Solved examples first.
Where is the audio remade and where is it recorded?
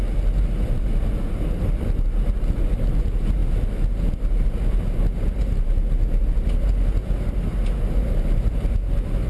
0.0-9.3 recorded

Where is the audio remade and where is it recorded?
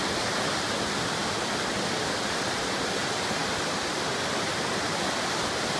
0.0-5.8 recorded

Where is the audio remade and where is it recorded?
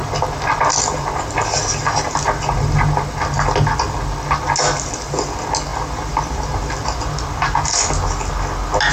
0.0-8.9 recorded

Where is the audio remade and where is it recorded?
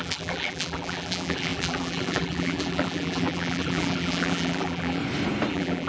0.0-5.0 remade; 5.0-5.5 recorded; 5.5-5.9 remade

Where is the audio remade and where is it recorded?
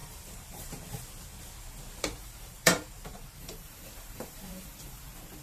0.0-0.7 remade; 0.7-2.2 recorded; 2.2-5.0 remade; 5.0-5.4 recorded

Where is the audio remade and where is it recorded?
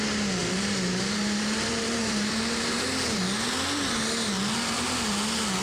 0.0-0.4 recorded; 0.4-3.2 remade; 3.2-5.6 recorded